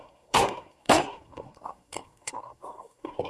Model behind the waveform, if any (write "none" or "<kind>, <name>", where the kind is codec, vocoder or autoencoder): codec, SNAC